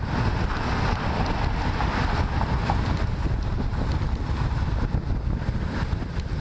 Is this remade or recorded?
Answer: recorded